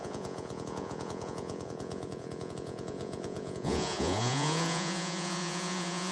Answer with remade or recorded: remade